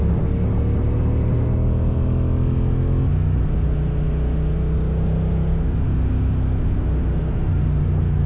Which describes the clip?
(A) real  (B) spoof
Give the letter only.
A